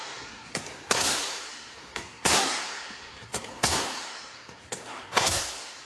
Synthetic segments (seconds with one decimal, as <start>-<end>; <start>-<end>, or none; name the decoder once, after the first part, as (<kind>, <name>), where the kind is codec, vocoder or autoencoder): 0.0-5.8 (codec, SNAC)